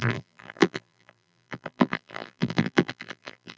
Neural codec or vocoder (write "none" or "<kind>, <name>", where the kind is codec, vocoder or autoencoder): vocoder, BigVGAN v2